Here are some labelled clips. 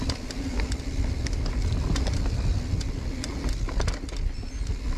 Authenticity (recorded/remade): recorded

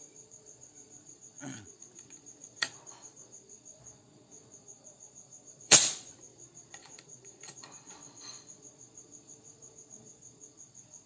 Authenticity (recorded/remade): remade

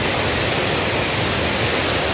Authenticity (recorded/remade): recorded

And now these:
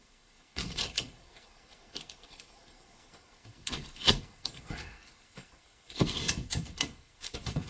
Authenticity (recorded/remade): remade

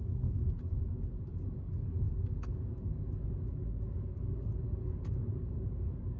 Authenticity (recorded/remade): remade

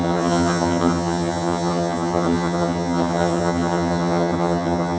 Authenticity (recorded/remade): remade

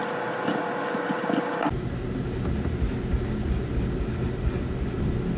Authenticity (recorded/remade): recorded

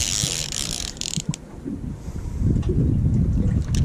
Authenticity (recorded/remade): recorded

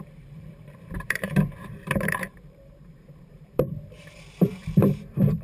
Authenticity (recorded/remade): remade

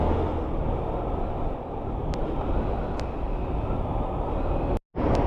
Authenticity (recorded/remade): recorded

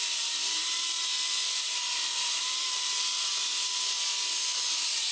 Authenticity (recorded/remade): remade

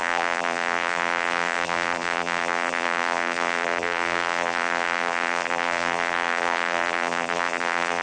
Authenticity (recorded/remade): remade